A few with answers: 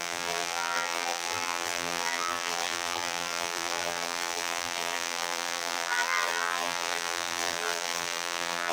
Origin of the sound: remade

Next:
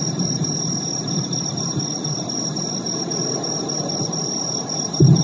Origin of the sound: recorded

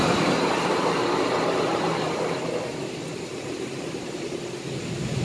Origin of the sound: recorded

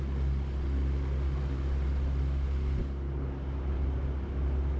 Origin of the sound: recorded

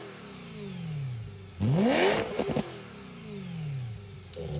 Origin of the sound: recorded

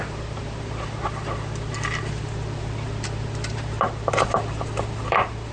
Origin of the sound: remade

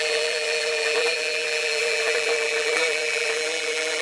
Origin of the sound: remade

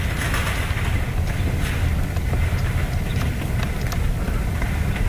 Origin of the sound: recorded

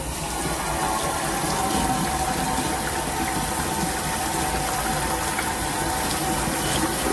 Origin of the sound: recorded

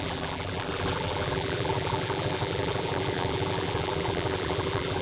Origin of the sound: remade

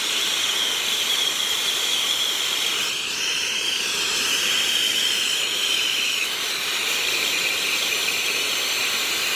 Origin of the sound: remade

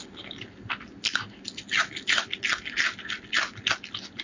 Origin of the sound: recorded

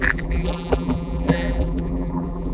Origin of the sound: remade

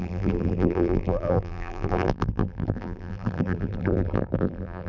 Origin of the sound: remade